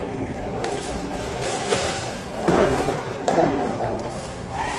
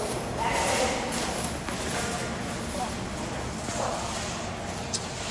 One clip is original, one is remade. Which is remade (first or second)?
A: first